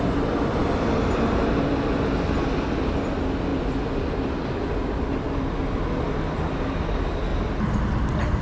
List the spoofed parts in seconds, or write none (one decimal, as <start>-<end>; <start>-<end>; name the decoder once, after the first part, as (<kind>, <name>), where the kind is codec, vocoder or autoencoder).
none